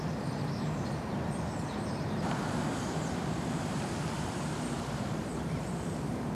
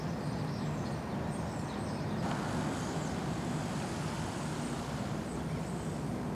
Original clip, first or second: second